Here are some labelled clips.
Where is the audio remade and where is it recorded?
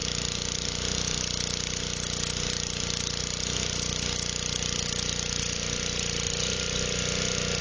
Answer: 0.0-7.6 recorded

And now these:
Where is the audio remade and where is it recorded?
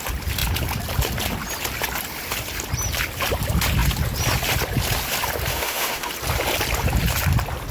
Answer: 0.0-5.5 recorded; 5.5-6.1 remade; 6.1-7.7 recorded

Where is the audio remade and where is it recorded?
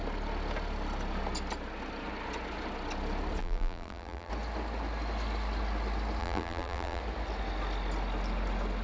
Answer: 0.0-3.4 recorded; 3.4-4.3 remade; 4.3-6.2 recorded; 6.2-7.0 remade; 7.0-8.8 recorded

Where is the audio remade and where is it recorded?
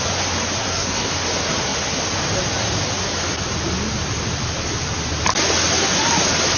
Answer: 0.0-0.6 recorded; 0.6-1.1 remade; 1.1-6.6 recorded